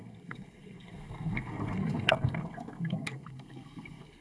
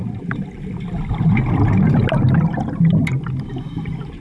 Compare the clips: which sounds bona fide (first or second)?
second